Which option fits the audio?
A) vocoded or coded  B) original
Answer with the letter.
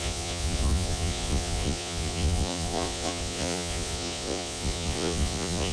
A